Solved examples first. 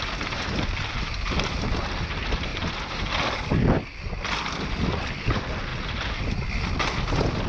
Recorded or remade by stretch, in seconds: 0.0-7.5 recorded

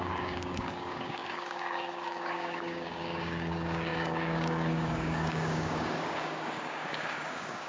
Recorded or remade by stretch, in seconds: 0.0-7.7 remade

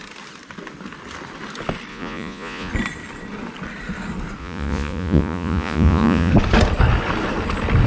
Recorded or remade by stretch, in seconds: 0.0-1.9 recorded; 1.9-2.7 remade; 2.7-4.4 recorded; 4.4-6.3 remade; 6.3-7.9 recorded

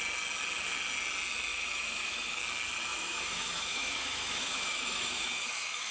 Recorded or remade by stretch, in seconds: 0.0-1.5 recorded; 1.5-2.4 remade; 2.4-2.9 recorded; 2.9-5.9 remade